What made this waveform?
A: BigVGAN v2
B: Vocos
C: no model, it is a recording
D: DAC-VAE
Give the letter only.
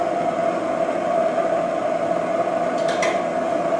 C